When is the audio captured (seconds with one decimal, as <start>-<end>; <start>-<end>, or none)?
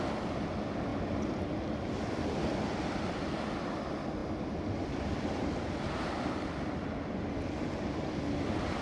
0.0-4.2; 5.3-8.8